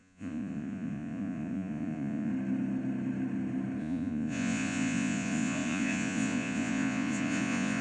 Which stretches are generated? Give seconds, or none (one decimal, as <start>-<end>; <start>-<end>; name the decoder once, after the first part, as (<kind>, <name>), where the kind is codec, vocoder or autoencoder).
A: 0.0-2.3 (vocoder, Vocos); 3.8-7.8